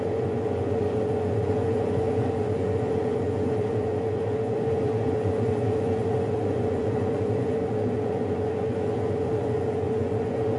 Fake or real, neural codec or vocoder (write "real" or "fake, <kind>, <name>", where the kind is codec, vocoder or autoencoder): fake, vocoder, Vocos